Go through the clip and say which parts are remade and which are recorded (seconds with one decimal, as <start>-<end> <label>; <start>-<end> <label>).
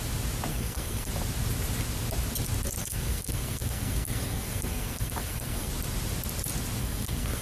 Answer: 0.0-0.5 recorded; 0.5-1.1 remade; 1.1-2.8 recorded; 2.8-5.7 remade; 5.7-6.8 recorded; 6.8-7.4 remade